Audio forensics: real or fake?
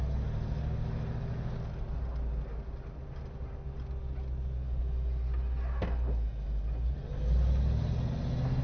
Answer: real